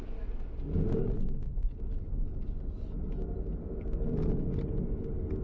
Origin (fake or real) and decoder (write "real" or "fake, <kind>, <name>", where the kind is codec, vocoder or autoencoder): real